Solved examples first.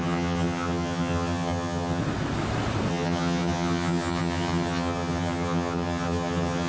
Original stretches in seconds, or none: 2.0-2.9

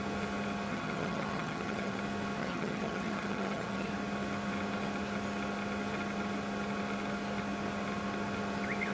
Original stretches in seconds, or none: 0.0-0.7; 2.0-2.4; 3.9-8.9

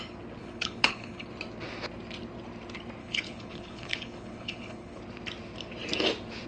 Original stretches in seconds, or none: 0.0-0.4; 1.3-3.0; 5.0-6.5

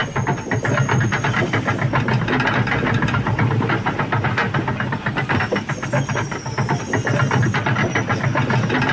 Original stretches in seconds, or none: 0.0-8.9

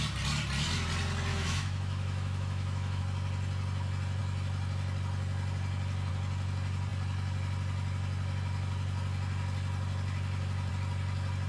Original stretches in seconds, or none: 0.0-1.3; 3.0-11.5

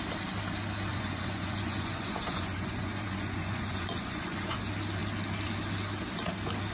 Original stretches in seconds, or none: 0.0-0.9; 4.6-6.7